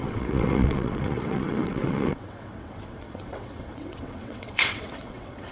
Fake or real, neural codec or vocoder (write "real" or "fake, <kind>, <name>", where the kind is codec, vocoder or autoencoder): fake, vocoder, WaveNeXt